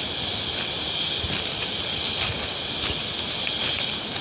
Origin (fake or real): real